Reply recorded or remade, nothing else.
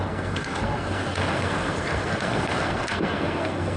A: remade